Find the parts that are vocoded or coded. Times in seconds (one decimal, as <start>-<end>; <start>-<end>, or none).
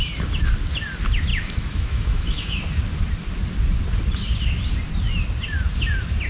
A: 1.3-2.6